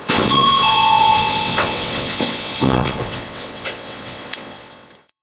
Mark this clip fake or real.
fake